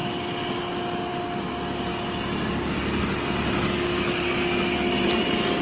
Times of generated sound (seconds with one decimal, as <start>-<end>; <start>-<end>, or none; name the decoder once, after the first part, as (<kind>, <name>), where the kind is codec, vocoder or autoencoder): none